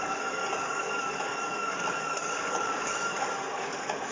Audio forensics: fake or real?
fake